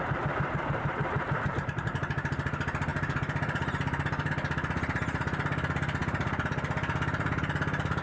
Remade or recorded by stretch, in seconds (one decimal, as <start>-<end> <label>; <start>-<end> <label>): 0.0-8.0 recorded